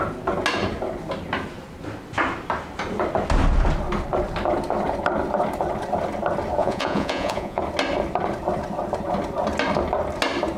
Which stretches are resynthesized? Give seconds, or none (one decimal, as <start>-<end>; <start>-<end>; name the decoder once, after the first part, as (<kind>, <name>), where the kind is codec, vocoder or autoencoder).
6.6-7.6 (vocoder, Vocos)